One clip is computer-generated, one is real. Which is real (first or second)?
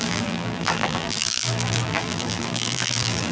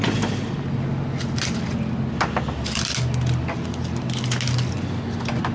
second